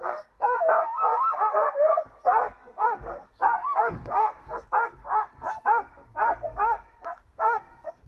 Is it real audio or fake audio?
fake